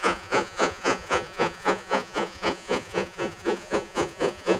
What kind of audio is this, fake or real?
fake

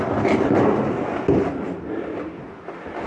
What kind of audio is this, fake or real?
real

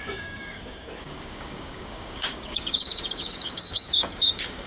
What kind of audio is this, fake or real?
fake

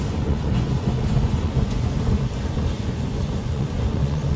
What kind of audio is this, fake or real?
fake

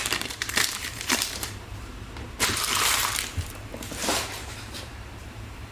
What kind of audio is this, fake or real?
fake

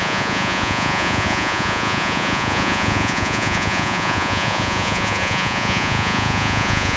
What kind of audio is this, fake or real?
fake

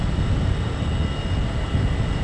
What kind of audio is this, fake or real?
real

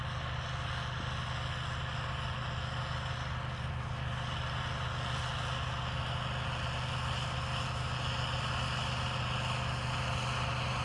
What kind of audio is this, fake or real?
real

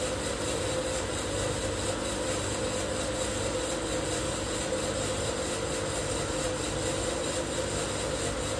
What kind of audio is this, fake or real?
real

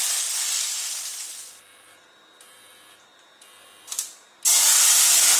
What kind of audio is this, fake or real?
real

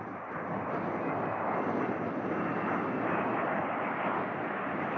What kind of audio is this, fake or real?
real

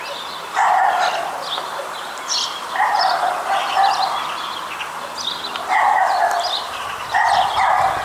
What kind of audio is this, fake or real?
real